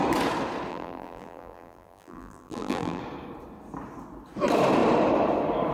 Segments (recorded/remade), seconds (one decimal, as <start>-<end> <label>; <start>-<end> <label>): 0.0-0.7 recorded; 0.7-3.0 remade; 3.0-5.7 recorded